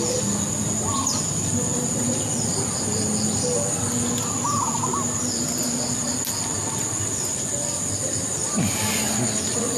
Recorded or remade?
recorded